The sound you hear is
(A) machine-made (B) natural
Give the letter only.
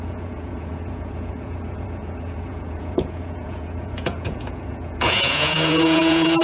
A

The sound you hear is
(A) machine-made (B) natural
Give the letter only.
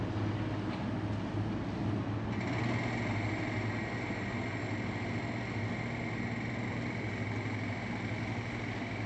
B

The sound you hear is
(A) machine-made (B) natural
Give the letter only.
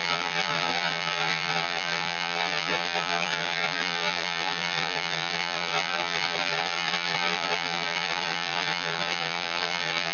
A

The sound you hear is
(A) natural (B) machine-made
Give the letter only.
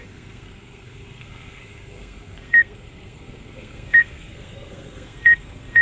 B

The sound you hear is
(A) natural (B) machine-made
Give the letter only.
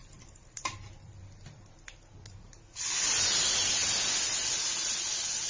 A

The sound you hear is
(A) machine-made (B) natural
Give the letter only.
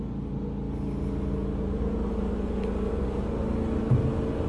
B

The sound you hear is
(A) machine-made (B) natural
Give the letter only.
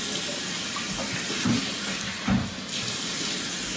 B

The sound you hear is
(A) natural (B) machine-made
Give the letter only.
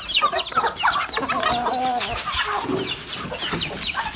A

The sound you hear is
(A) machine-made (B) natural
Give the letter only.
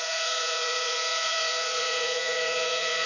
A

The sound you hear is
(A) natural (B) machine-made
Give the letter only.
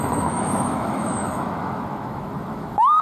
B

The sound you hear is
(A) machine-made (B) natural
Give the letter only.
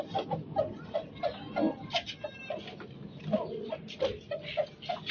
B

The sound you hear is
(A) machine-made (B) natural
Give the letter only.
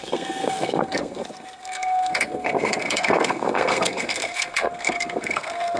A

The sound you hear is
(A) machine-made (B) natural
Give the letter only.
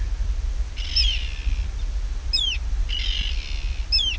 B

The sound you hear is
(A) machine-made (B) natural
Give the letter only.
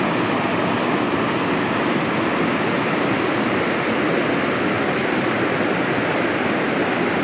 B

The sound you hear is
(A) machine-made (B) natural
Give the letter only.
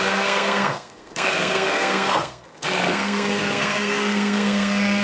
A